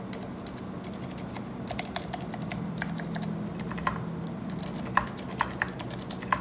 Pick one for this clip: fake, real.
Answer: real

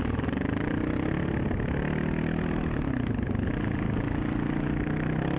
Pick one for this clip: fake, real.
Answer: real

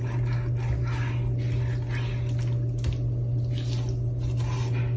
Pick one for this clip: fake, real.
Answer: real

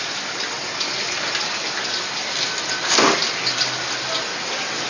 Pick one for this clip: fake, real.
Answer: real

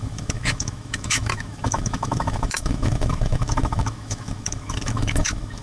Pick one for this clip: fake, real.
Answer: fake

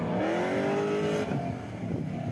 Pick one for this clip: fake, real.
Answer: real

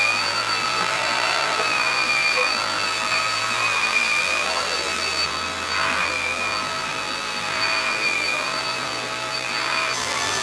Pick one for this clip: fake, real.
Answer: fake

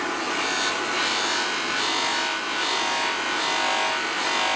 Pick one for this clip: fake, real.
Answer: real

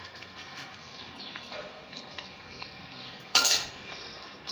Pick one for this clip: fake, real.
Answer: fake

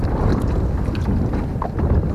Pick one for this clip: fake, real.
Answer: real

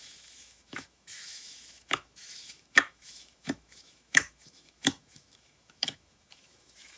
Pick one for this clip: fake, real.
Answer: fake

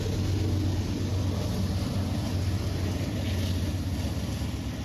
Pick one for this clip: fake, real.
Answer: real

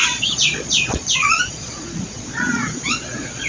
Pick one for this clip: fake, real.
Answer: fake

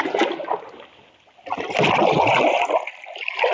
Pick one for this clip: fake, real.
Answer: real